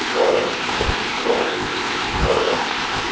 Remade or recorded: remade